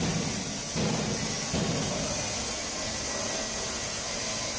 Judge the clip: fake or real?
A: real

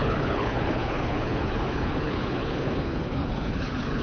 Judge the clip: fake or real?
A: fake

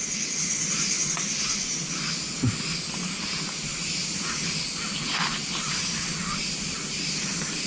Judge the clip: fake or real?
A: real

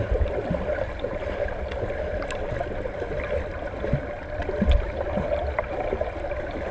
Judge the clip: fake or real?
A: real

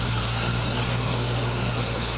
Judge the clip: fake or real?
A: fake